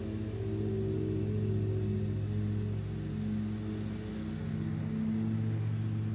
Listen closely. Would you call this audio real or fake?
real